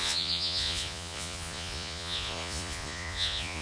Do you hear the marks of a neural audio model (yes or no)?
yes